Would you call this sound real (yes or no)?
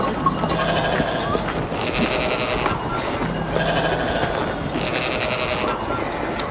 yes